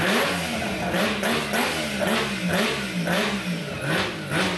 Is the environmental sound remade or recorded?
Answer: recorded